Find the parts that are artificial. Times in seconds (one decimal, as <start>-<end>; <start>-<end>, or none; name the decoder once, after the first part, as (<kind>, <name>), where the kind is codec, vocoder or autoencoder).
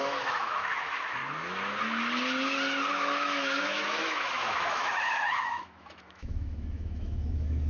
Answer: 0.0-1.2 (autoencoder, DAC-VAE); 2.9-7.7